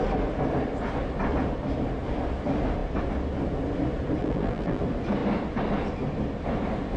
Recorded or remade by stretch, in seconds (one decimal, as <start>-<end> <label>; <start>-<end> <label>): 0.0-4.2 recorded; 4.2-4.8 remade; 4.8-7.0 recorded